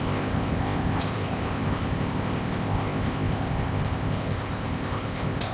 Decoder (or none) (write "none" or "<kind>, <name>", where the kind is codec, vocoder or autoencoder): codec, ZipCodec